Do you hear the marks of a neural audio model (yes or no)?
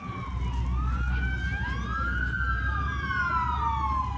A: no